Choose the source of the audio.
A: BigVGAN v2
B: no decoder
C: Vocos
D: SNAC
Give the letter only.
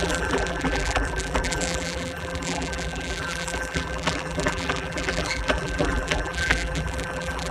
A